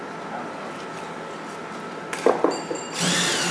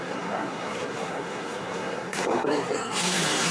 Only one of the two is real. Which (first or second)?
first